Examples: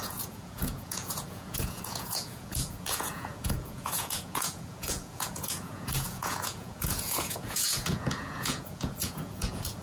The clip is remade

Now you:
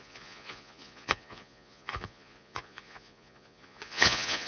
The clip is remade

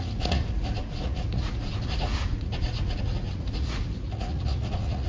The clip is remade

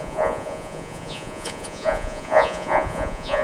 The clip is remade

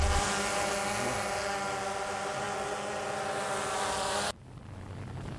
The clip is recorded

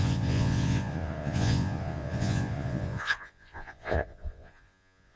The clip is remade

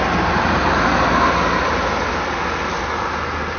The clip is recorded